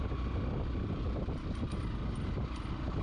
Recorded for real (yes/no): yes